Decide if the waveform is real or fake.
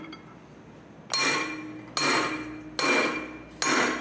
real